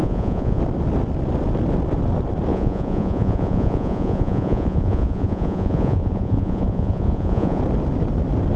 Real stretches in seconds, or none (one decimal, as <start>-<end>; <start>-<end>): 0.6-2.5; 7.6-8.6